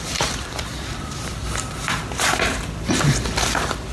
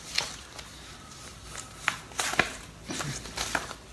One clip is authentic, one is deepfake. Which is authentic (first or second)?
second